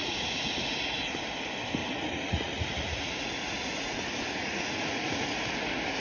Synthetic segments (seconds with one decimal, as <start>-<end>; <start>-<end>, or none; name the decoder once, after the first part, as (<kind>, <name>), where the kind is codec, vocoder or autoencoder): 0.0-1.2 (vocoder, Vocos); 1.8-5.4